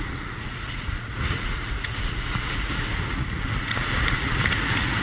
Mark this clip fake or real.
fake